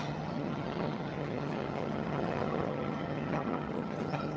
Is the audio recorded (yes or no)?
no